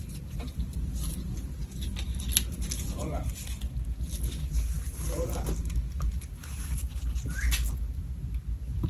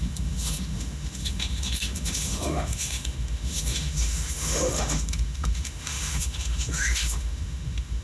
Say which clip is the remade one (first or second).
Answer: second